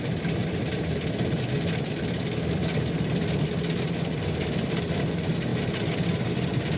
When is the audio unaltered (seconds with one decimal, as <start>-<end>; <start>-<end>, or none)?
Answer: 0.0-6.8